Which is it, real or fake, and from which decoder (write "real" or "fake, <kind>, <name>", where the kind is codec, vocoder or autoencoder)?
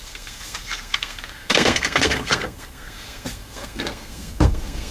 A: fake, codec, SNAC